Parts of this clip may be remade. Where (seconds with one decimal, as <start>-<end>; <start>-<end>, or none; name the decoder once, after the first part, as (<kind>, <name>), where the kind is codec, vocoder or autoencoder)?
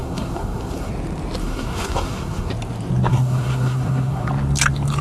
0.0-0.9 (codec, SNAC); 1.4-2.5; 3.1-4.3